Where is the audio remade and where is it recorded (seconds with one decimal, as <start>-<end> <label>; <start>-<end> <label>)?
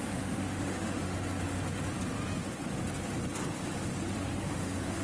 0.0-1.1 remade; 1.1-4.1 recorded; 4.1-5.0 remade